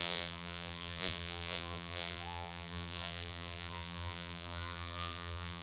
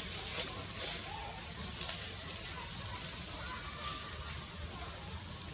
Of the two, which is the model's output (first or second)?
first